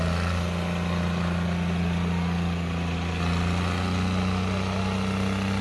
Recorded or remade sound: recorded